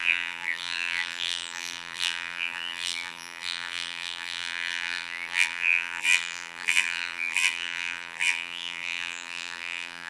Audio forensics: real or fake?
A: fake